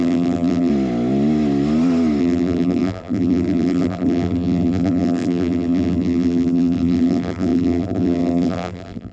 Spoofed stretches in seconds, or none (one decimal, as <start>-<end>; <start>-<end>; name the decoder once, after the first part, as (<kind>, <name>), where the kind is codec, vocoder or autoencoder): 0.0-0.7 (vocoder, BigVGAN v2); 2.2-9.1